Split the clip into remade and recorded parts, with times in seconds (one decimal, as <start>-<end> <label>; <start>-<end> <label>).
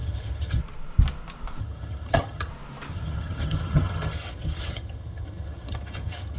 0.0-0.6 remade; 0.6-1.6 recorded; 1.6-2.5 remade; 2.5-2.9 recorded; 2.9-6.4 remade